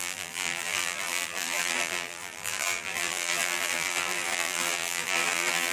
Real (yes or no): no